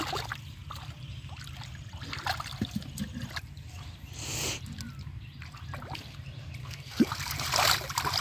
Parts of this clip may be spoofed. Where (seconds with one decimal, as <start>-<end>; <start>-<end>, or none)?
6.6-7.1